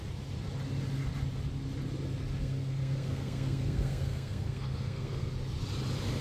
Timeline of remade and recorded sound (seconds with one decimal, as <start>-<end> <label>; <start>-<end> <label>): 0.0-2.4 recorded; 2.4-5.3 remade; 5.3-6.2 recorded